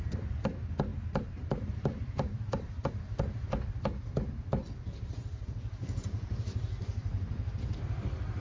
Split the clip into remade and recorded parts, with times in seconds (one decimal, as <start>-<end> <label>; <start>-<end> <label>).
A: 0.0-0.9 recorded; 0.9-2.7 remade; 2.7-8.4 recorded